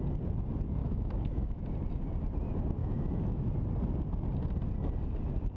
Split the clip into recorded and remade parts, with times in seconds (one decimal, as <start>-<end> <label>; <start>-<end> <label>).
0.0-0.8 recorded; 0.8-1.6 remade; 1.6-2.8 recorded; 2.8-3.5 remade; 3.5-5.6 recorded